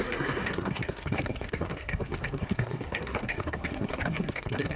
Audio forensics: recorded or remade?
remade